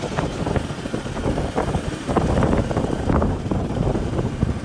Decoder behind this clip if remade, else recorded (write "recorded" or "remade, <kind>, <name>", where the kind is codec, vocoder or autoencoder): remade, vocoder, BigVGAN v2